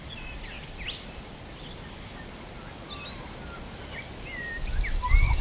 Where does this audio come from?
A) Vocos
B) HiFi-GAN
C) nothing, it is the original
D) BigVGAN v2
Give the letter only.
C